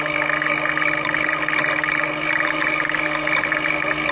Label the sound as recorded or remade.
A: recorded